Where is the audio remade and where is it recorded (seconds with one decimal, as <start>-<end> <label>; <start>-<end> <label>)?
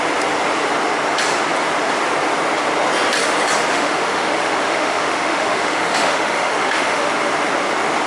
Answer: 0.0-3.7 recorded; 3.7-7.1 remade; 7.1-8.1 recorded